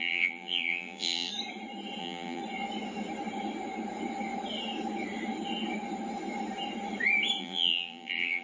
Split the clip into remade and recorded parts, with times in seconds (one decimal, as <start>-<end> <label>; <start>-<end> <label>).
0.0-1.3 remade; 1.3-2.0 recorded; 2.0-2.4 remade; 2.4-7.4 recorded; 7.4-8.4 remade